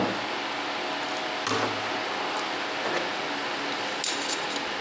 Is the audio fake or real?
real